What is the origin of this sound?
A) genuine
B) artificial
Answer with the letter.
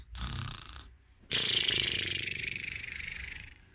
B